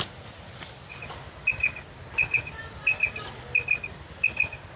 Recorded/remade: recorded